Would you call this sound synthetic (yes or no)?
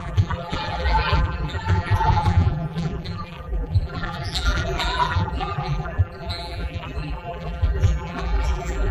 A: yes